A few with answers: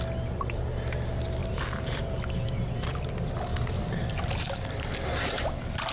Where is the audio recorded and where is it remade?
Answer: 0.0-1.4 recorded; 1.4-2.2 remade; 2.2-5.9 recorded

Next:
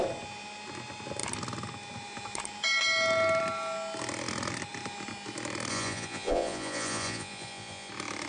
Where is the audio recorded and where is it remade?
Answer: 0.0-5.7 recorded; 5.7-7.9 remade; 7.9-8.3 recorded

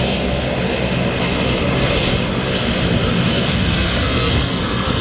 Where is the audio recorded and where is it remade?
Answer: 0.0-3.3 recorded; 3.3-5.0 remade

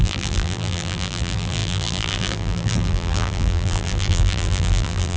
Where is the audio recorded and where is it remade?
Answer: 0.0-5.2 remade

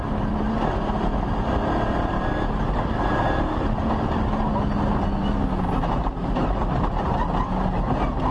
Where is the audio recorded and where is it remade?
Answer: 0.0-8.3 recorded

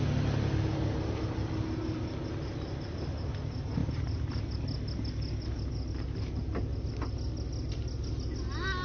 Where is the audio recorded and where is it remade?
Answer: 0.0-8.8 recorded

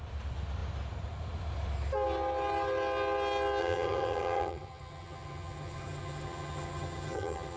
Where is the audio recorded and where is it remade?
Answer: 0.0-3.6 recorded; 3.6-7.6 remade

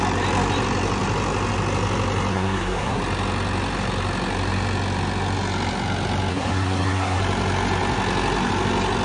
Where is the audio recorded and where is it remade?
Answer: 0.0-2.3 recorded; 2.3-3.0 remade; 3.0-6.3 recorded; 6.3-7.2 remade; 7.2-9.0 recorded